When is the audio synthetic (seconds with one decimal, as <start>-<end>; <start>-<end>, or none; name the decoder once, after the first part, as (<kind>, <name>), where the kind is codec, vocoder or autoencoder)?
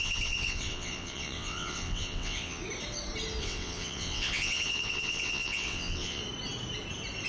0.0-2.6 (vocoder, WaveNeXt); 3.4-6.2